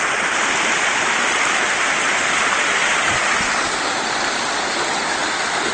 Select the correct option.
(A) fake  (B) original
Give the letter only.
B